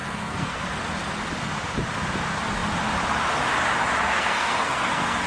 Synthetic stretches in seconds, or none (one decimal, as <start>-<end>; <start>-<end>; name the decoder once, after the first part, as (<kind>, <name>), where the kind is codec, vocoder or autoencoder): 0.0-0.8 (codec, SNAC); 4.1-5.3